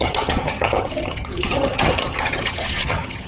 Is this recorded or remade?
remade